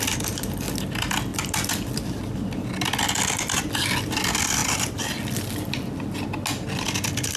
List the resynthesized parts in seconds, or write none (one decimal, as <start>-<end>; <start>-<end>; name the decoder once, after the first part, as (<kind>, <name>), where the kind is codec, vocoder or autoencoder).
none

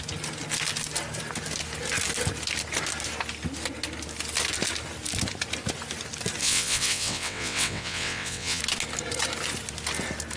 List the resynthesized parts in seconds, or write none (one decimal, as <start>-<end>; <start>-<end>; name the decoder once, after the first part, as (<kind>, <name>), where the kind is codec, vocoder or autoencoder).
6.4-8.6 (vocoder, WaveNeXt)

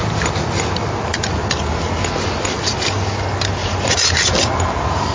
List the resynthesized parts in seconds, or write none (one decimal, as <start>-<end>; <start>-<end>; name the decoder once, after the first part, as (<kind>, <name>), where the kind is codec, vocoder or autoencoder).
3.6-4.2 (vocoder, Vocos)

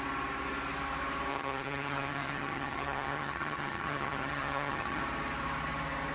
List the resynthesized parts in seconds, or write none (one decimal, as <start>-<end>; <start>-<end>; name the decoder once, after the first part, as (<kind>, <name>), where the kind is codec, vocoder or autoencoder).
1.3-5.0 (vocoder, HiFi-GAN)

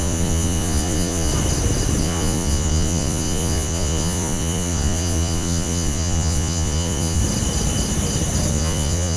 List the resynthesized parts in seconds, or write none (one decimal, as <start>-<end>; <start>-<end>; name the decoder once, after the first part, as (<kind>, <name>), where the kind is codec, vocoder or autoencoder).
0.0-1.3 (vocoder, Vocos); 2.0-7.2; 8.5-9.2

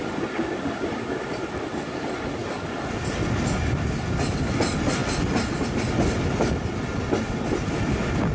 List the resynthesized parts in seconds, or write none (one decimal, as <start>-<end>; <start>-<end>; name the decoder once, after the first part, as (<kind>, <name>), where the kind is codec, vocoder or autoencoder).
none

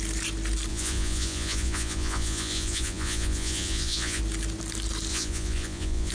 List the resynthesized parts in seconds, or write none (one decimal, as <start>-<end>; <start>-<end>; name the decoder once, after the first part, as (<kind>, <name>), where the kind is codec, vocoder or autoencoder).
0.7-4.2 (vocoder, Vocos); 5.1-6.1

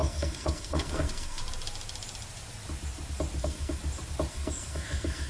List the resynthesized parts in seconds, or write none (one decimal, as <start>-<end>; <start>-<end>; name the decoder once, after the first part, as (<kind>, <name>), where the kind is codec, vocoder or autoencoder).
0.0-1.4 (codec, SNAC); 3.4-3.8; 4.3-5.3